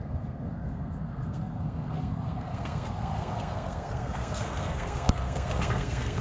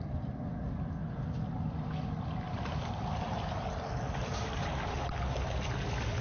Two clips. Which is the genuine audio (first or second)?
second